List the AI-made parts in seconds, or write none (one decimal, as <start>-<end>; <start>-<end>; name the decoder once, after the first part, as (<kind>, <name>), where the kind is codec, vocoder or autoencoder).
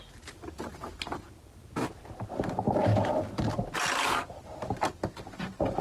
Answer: none